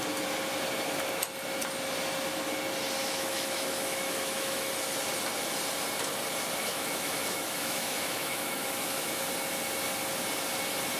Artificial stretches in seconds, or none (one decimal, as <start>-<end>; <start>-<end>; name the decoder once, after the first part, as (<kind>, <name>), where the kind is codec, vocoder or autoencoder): 3.0-4.7 (autoencoder, DAC-VAE); 6.6-9.2